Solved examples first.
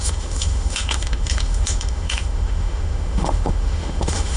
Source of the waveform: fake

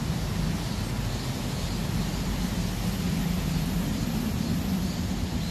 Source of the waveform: real